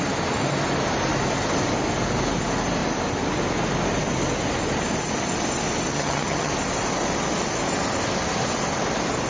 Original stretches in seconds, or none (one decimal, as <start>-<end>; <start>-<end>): 0.0-5.9; 6.5-9.3